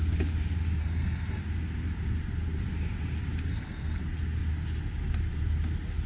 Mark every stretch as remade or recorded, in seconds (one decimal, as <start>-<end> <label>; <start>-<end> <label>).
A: 0.0-0.8 recorded; 0.8-1.4 remade; 1.4-3.5 recorded; 3.5-4.0 remade; 4.0-6.1 recorded